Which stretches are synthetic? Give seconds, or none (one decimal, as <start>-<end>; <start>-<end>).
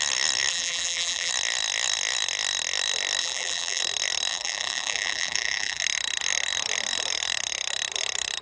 0.5-1.3; 3.2-3.8; 4.3-5.8